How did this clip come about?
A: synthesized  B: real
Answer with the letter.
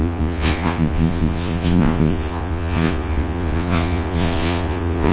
A